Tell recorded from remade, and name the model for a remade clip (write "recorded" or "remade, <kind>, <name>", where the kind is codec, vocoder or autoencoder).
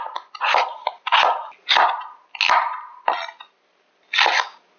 recorded